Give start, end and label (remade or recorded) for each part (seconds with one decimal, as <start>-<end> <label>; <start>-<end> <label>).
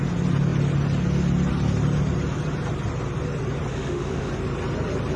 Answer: 0.0-3.7 recorded; 3.7-4.3 remade; 4.3-5.2 recorded